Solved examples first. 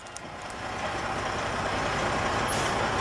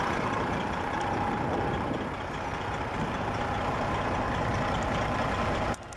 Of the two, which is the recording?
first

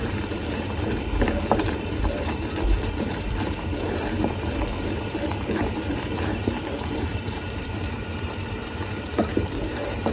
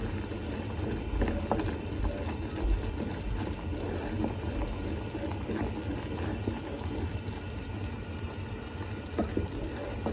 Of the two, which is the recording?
second